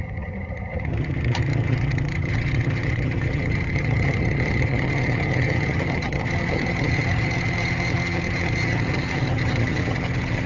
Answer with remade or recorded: remade